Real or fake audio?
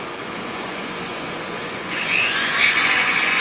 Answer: fake